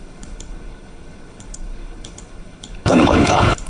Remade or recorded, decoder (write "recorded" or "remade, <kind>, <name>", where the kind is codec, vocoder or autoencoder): remade, codec, HILCodec